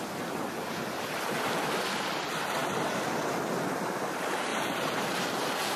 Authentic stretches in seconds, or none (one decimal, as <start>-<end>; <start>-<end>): 0.0-4.5